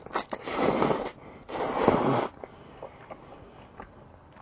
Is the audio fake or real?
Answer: real